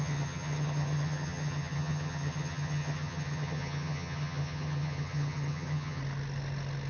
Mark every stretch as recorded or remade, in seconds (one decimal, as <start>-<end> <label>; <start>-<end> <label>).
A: 0.0-6.0 remade; 6.0-6.9 recorded